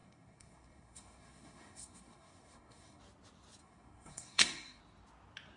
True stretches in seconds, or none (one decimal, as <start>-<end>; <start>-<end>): 3.0-3.6; 4.8-5.6